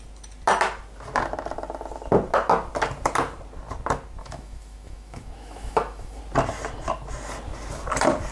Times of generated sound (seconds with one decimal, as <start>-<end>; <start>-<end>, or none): 4.2-6.2